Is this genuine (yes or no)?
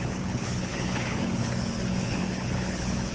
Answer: no